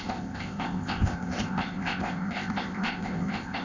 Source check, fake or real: fake